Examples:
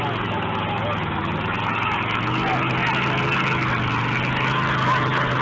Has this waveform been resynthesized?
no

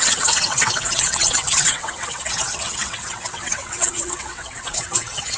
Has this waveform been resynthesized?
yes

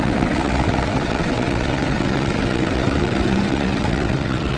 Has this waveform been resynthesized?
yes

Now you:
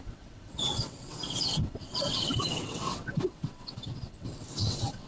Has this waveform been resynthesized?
yes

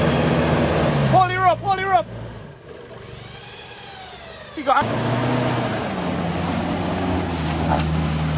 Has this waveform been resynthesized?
no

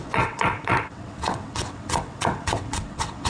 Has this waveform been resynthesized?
yes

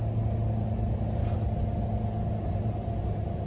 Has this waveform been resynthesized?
no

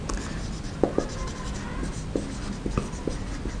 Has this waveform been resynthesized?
no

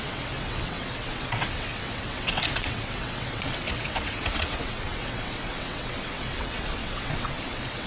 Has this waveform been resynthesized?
yes